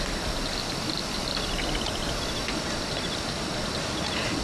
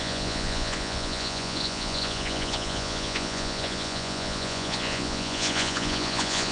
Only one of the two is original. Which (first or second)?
first